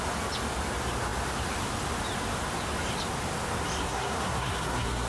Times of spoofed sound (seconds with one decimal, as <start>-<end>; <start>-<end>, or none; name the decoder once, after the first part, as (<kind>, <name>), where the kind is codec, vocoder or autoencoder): 3.8-5.1 (codec, SNAC)

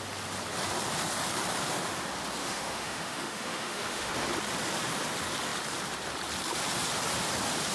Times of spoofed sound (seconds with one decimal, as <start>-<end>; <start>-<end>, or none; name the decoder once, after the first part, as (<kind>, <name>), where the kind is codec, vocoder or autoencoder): 2.4-4.1 (autoencoder, DAC-VAE)

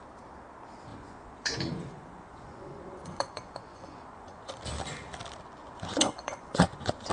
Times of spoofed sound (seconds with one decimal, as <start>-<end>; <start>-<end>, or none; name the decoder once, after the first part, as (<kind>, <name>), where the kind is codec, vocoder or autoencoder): 0.9-4.5 (vocoder, Vocos); 5.6-7.1

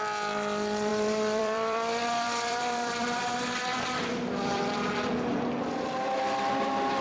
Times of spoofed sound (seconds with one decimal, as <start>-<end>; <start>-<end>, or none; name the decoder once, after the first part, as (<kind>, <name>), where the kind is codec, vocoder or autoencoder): 0.9-5.1 (vocoder, BigVGAN v2)

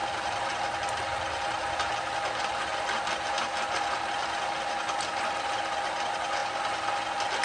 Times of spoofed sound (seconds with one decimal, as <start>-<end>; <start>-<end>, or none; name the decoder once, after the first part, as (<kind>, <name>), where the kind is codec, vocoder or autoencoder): none

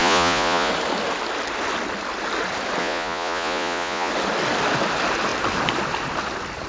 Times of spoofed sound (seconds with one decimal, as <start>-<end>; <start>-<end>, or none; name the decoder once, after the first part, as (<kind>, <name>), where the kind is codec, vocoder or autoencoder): 0.0-0.7 (vocoder, Vocos); 2.8-4.1

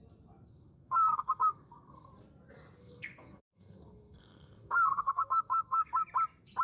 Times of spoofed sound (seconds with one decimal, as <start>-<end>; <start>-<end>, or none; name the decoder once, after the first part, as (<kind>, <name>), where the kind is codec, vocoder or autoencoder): 0.5-2.1 (codec, SNAC); 2.8-6.0

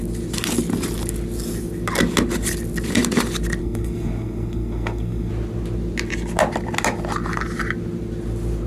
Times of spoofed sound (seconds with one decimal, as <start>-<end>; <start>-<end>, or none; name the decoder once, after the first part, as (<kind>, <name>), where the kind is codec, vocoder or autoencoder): 3.6-5.3 (codec, SNAC)